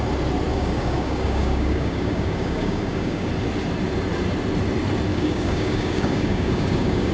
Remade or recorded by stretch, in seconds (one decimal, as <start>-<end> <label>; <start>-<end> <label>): 0.0-0.5 recorded; 0.5-3.3 remade; 3.3-5.1 recorded; 5.1-7.1 remade